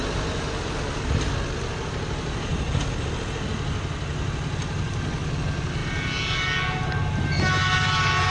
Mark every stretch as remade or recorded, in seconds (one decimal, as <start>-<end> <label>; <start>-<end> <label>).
0.0-8.3 recorded